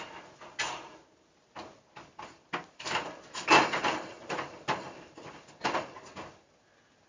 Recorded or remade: recorded